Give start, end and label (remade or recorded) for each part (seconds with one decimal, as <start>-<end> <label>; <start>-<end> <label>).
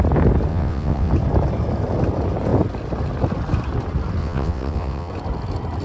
0.0-0.5 recorded; 0.5-1.1 remade; 1.1-4.2 recorded; 4.2-5.1 remade; 5.1-5.8 recorded